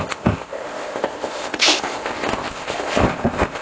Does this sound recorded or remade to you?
remade